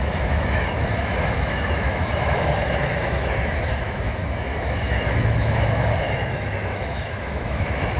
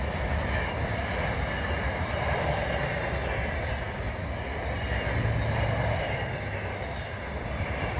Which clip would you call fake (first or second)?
first